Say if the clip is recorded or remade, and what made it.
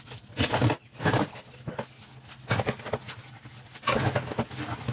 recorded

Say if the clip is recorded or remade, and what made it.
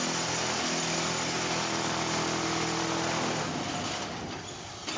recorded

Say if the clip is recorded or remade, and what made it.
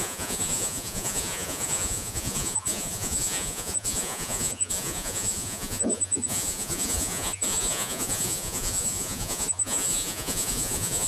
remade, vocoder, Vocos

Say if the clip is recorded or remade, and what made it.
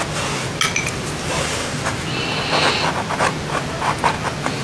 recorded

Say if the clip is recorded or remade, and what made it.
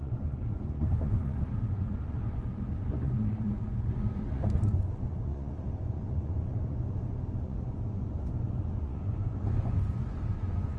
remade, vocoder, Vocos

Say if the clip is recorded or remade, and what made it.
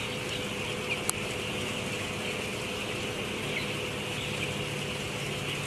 recorded